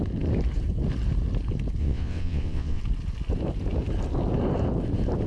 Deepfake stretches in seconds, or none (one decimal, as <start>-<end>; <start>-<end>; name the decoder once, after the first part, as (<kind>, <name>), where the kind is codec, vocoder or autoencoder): 1.8-2.8 (vocoder, WaveNeXt)